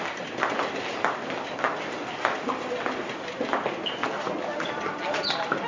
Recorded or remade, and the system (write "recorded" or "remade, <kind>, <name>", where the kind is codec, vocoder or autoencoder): recorded